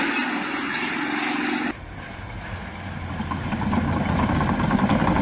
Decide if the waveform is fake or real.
real